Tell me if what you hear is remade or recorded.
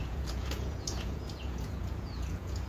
remade